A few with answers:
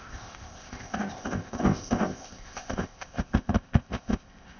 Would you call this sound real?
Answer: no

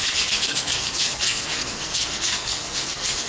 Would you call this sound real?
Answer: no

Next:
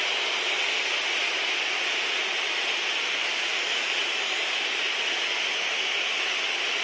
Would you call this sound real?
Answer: yes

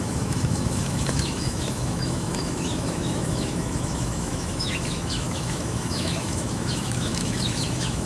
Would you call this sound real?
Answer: no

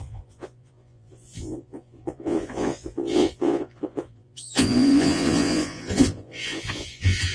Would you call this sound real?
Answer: no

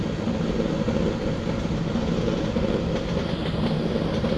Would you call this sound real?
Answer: yes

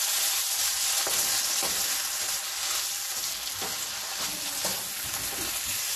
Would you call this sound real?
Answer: yes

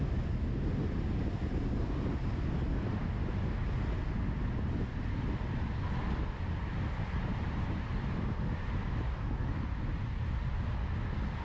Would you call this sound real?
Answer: yes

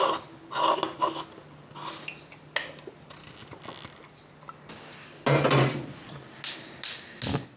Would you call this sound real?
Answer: yes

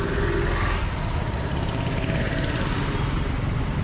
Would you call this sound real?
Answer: yes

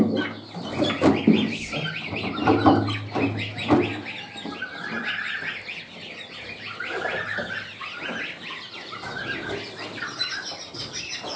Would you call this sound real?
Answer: yes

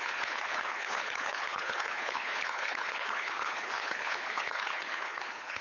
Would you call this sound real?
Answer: no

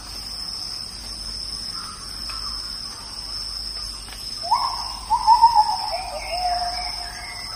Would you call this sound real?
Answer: yes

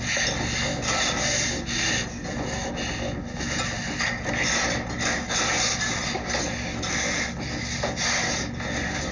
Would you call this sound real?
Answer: yes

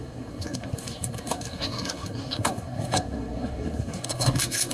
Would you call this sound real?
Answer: no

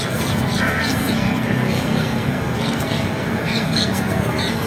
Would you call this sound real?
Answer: no